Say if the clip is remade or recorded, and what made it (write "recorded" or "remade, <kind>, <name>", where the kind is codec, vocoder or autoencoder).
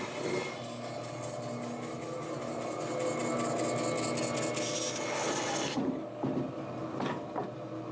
recorded